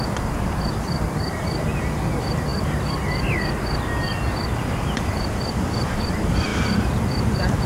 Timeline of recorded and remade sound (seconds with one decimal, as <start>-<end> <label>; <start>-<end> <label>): 0.0-2.5 remade; 2.5-4.6 recorded; 4.6-6.5 remade; 6.5-7.0 recorded; 7.0-7.7 remade